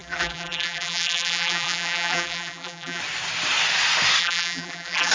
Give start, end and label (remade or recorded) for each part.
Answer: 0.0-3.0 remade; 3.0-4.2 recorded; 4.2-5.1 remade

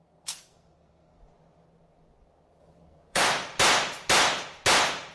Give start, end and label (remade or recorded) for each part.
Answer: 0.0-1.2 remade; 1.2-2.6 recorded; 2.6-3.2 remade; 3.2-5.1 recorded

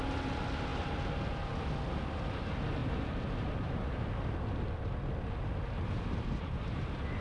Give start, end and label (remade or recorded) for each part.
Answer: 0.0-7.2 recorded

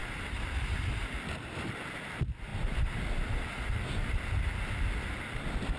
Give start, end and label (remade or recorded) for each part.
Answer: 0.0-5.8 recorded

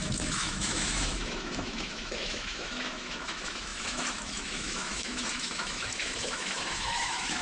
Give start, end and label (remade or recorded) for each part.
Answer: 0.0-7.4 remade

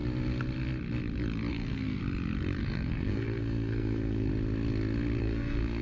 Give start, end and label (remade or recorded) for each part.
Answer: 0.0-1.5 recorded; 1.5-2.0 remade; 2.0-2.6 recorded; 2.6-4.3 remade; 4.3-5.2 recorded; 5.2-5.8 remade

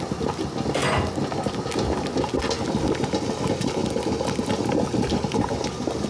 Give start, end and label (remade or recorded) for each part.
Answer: 0.0-6.1 recorded